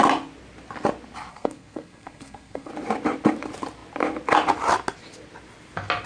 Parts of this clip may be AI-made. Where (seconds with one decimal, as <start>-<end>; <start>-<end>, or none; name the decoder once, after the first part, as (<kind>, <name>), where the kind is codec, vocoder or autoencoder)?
1.3-2.7 (codec, SNAC)